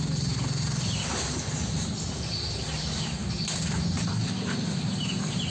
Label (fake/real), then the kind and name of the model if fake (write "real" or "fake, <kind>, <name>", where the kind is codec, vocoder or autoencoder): real